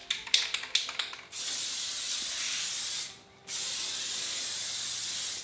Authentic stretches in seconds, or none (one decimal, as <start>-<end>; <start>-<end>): 0.0-5.4